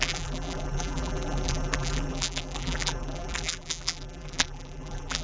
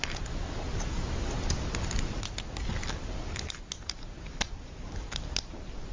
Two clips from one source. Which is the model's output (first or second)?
first